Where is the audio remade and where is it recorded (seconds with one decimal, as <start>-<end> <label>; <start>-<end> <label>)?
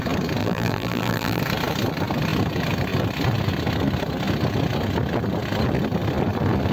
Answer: 0.0-0.4 recorded; 0.4-1.4 remade; 1.4-6.7 recorded